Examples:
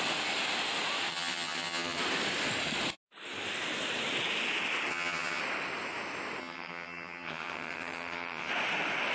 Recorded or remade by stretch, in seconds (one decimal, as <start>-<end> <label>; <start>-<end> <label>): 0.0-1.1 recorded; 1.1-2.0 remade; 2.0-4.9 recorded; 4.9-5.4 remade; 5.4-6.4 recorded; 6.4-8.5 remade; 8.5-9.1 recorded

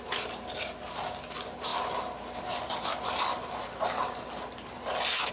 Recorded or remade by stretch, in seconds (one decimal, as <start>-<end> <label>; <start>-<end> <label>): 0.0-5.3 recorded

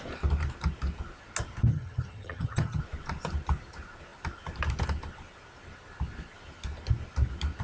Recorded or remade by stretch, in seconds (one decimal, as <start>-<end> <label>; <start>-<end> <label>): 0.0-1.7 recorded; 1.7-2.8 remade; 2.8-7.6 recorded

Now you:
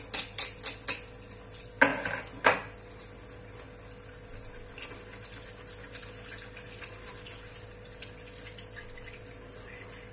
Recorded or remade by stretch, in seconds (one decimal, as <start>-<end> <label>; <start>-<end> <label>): 0.0-10.1 recorded

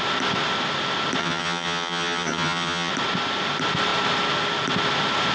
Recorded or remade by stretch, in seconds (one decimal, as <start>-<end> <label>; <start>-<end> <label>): 0.0-1.2 recorded; 1.2-2.9 remade; 2.9-5.3 recorded

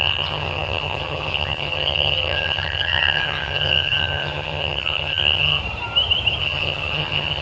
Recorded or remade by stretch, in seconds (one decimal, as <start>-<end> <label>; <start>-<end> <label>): 0.0-5.6 remade; 5.6-6.4 recorded; 6.4-7.4 remade

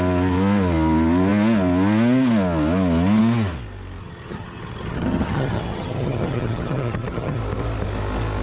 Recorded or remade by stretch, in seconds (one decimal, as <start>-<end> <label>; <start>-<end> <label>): 0.0-4.0 recorded; 4.0-7.4 remade; 7.4-8.4 recorded